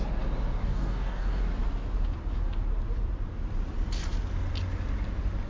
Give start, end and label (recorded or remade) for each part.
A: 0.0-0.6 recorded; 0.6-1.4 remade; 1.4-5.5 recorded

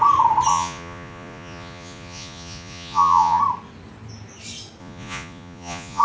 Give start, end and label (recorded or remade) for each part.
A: 0.0-0.5 recorded; 0.5-3.4 remade; 3.4-4.8 recorded; 4.8-6.0 remade

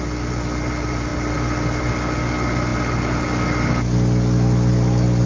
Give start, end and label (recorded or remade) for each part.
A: 0.0-1.1 recorded; 1.1-1.8 remade; 1.8-2.7 recorded; 2.7-3.2 remade; 3.2-5.3 recorded

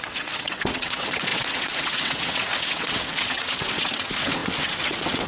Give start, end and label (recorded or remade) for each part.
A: 0.0-5.3 remade

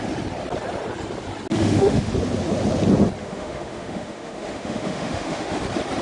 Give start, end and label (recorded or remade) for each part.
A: 0.0-1.5 recorded; 1.5-2.1 remade; 2.1-3.2 recorded; 3.2-5.6 remade; 5.6-6.0 recorded